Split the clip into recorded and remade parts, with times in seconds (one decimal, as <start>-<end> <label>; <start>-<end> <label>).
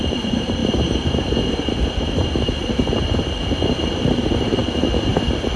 0.0-0.6 remade; 0.6-4.0 recorded; 4.0-4.6 remade; 4.6-5.6 recorded